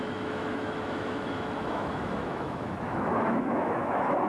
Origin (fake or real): fake